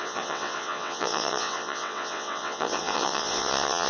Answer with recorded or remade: remade